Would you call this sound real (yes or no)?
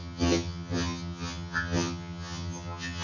no